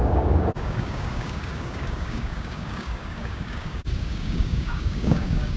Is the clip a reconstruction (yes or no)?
yes